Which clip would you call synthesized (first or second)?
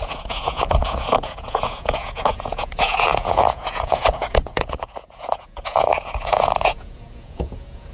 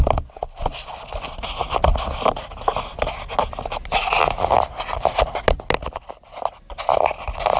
first